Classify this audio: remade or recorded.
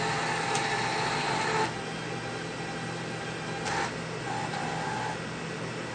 recorded